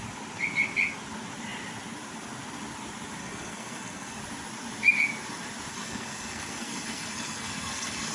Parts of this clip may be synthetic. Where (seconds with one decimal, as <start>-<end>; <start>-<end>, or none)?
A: 3.2-4.2; 5.7-8.1